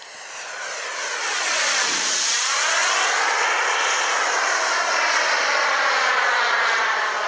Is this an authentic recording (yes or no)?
yes